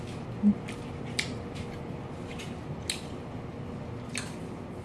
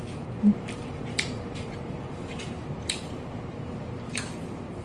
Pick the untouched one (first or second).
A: first